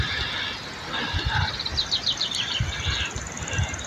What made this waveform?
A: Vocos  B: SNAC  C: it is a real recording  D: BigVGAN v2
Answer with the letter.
C